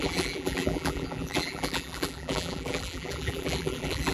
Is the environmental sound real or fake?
fake